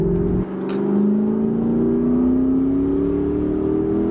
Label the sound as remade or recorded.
recorded